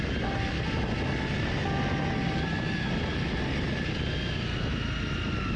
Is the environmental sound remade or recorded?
recorded